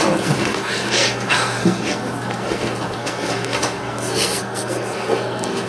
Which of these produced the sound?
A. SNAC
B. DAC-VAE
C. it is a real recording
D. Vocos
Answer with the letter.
A